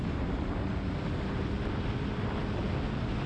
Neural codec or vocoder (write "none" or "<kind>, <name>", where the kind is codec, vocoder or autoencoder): none